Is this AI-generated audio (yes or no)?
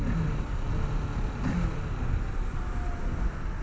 no